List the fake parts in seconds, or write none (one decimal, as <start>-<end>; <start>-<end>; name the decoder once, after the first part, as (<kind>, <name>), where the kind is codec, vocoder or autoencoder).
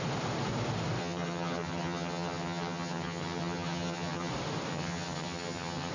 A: 1.0-4.3 (vocoder, HiFi-GAN); 4.7-5.9